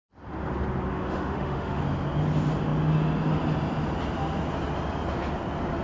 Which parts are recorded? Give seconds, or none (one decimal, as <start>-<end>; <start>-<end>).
0.0-0.9; 1.8-5.8